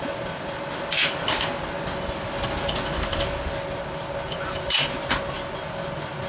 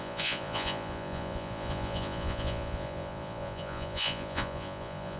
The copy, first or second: second